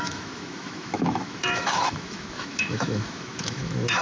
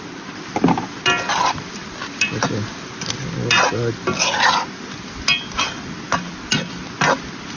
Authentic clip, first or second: second